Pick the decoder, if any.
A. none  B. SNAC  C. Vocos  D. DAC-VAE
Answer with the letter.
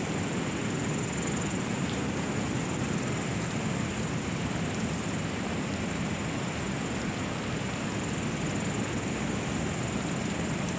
A